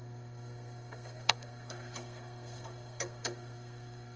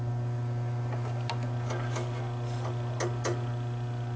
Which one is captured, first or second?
second